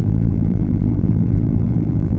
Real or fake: fake